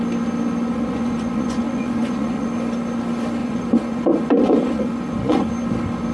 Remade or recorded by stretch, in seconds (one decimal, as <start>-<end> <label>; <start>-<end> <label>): 0.0-0.7 recorded; 0.7-2.5 remade; 2.5-3.4 recorded; 3.4-5.5 remade; 5.5-6.1 recorded